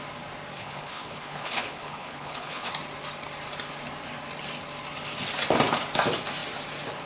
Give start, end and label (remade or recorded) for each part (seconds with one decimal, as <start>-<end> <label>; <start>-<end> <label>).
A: 0.0-0.6 recorded; 0.6-2.7 remade; 2.7-7.1 recorded